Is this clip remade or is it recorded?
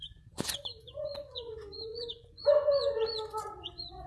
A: remade